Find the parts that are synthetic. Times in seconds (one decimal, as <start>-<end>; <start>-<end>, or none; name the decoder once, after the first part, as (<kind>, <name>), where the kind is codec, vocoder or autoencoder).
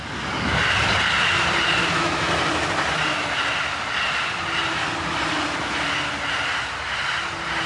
1.8-2.3 (autoencoder, DAC-VAE)